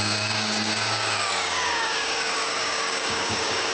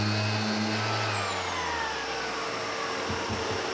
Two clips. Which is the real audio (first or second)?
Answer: second